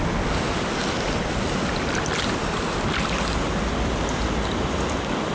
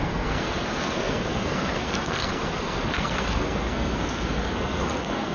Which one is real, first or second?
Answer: first